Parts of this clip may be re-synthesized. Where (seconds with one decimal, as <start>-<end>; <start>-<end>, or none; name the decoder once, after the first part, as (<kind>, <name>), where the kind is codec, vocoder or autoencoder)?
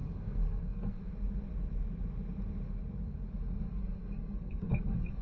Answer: 0.0-1.0 (codec, SNAC); 3.7-5.2